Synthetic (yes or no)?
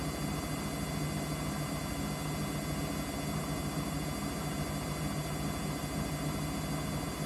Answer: no